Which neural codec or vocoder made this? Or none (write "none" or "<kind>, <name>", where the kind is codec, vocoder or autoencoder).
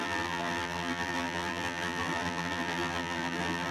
vocoder, BigVGAN v2